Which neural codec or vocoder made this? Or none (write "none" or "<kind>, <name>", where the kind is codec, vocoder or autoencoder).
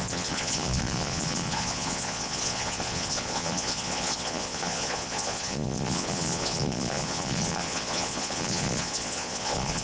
vocoder, Vocos